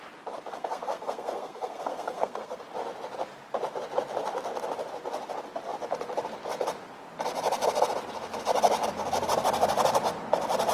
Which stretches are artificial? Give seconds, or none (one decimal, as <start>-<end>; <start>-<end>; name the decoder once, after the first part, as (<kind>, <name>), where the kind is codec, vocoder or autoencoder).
0.5-2.6 (codec, SNAC)